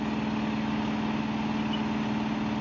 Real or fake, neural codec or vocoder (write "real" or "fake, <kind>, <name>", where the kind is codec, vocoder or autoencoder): real